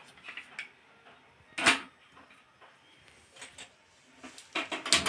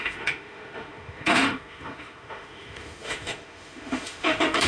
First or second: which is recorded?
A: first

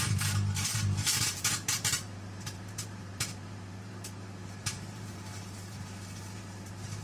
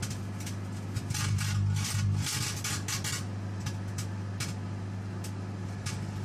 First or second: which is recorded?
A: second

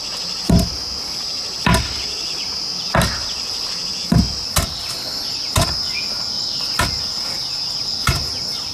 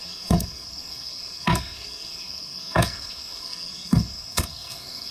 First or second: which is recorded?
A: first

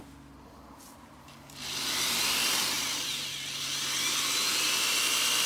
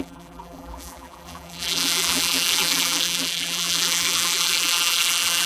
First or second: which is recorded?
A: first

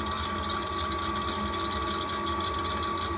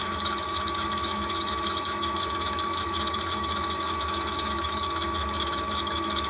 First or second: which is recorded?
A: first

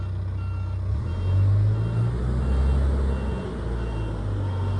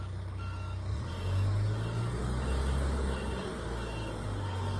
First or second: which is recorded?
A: first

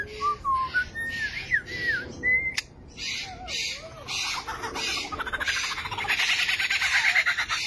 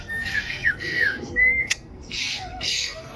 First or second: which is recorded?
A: first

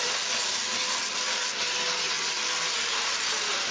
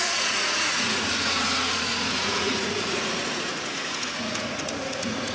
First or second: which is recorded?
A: first